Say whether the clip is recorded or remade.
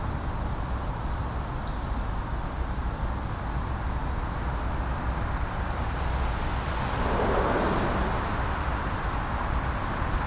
recorded